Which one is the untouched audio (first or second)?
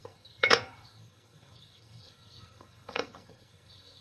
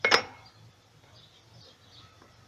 second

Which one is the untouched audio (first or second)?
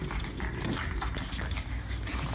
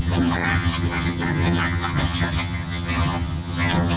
first